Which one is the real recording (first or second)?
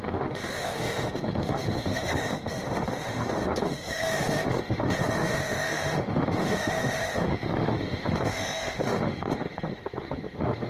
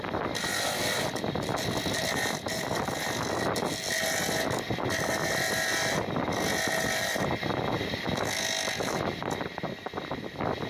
second